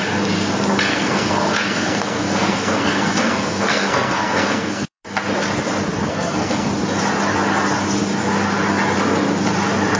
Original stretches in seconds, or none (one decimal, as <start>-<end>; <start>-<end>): 0.0-0.9; 5.0-6.0; 6.7-10.0